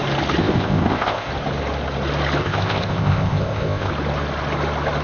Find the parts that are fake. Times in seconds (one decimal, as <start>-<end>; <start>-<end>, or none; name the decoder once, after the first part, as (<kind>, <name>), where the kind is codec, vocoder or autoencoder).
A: 0.4-1.3 (codec, ZipCodec); 2.4-3.9